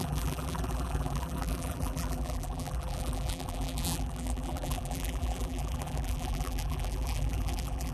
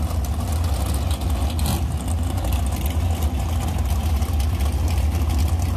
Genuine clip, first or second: second